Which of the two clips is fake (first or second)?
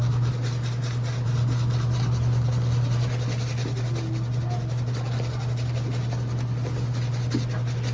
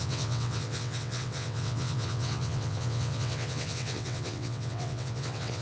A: second